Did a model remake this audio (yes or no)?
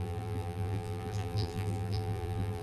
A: yes